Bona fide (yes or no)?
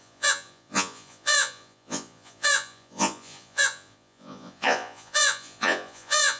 no